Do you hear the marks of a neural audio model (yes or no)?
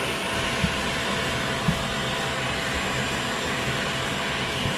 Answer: no